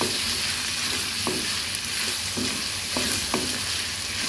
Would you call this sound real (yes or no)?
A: yes